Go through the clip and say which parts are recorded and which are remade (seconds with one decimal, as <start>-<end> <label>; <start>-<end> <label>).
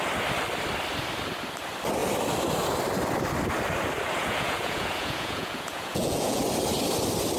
0.0-4.2 recorded; 4.2-6.4 remade; 6.4-7.4 recorded